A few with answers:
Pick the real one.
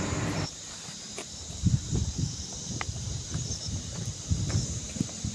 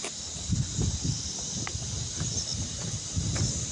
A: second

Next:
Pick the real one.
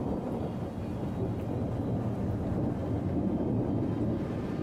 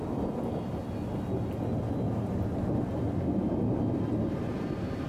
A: second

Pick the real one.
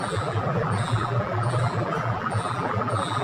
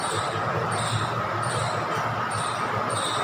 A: second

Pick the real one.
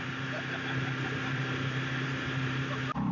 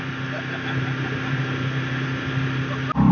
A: second